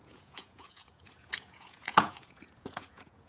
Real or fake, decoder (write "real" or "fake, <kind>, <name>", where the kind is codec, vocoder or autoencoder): fake, vocoder, Vocos